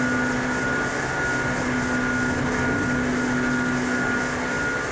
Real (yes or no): yes